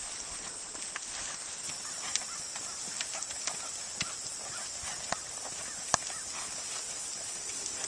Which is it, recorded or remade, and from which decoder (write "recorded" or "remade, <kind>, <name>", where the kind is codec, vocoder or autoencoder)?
recorded